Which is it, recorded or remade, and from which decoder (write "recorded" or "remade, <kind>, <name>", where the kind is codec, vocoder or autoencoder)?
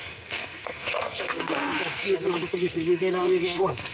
remade, codec, SNAC